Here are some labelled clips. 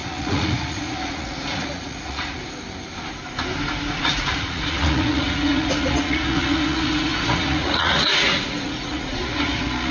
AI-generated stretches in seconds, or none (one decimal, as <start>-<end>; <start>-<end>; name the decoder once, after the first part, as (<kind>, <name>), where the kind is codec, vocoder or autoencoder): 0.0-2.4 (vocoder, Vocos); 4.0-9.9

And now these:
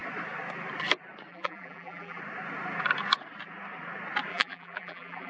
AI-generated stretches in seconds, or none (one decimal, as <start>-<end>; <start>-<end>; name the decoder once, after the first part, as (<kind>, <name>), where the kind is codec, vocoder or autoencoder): 1.3-2.2 (vocoder, BigVGAN v2); 4.3-5.3

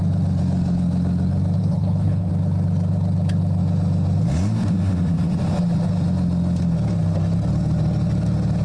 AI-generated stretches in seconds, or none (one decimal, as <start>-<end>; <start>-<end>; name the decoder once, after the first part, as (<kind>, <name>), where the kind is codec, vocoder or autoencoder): 1.6-2.3 (codec, HILCodec)